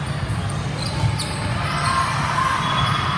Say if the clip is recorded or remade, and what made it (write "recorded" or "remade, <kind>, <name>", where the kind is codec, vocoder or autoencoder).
recorded